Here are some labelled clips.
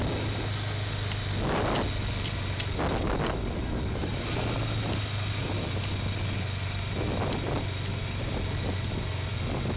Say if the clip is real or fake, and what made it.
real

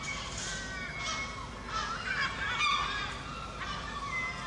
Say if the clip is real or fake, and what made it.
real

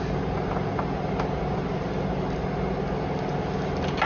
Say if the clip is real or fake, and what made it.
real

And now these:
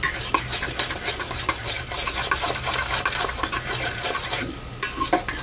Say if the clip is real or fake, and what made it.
real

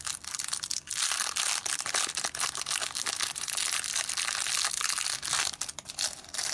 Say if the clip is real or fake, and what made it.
real